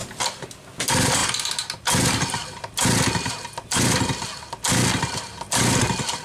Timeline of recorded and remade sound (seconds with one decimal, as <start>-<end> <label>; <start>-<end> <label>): 0.0-6.2 recorded